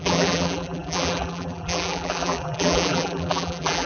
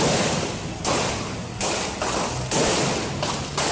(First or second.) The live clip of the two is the second